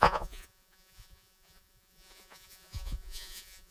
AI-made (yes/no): yes